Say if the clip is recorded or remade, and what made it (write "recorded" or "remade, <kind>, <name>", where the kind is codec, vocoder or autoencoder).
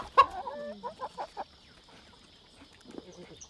recorded